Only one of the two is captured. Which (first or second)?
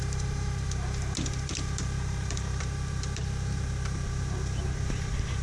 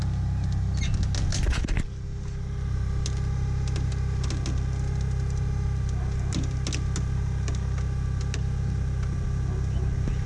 second